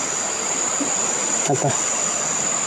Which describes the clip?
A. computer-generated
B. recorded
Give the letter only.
B